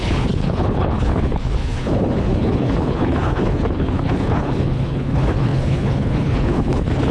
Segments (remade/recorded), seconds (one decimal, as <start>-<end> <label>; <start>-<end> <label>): 0.0-7.1 remade